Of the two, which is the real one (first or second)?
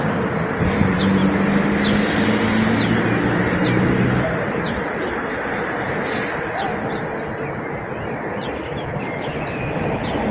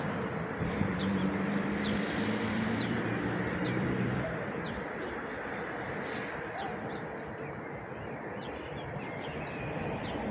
first